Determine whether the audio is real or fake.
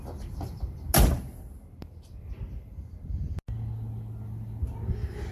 real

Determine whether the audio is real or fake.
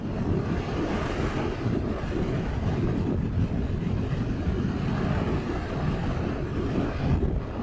real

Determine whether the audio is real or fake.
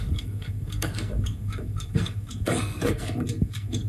fake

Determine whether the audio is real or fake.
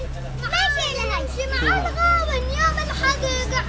real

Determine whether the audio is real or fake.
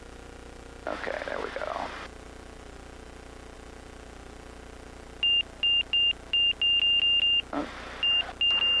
real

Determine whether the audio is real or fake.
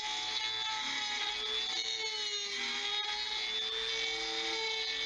real